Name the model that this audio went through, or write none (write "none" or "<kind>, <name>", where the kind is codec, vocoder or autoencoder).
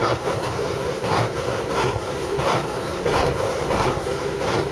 codec, SNAC